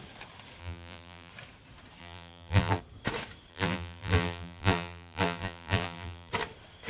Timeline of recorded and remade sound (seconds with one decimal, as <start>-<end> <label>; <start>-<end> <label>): 0.0-0.6 recorded; 0.6-1.3 remade; 1.3-2.0 recorded; 2.0-2.8 remade; 2.8-3.5 recorded; 3.5-6.3 remade; 6.3-6.9 recorded